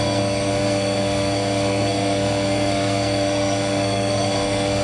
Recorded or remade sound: remade